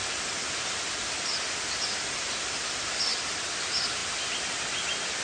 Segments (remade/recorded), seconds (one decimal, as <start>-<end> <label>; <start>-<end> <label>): 0.0-5.2 recorded